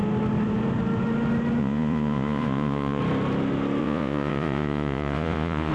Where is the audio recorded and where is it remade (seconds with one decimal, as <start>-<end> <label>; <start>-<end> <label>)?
0.0-1.6 recorded; 1.6-3.0 remade; 3.0-3.8 recorded; 3.8-5.7 remade